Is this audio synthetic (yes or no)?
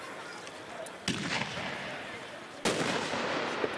no